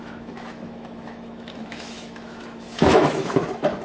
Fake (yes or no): yes